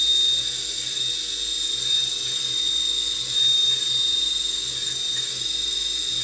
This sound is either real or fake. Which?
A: real